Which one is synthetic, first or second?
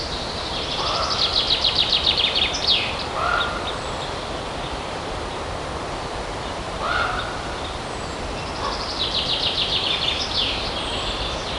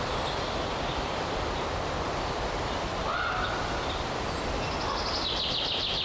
first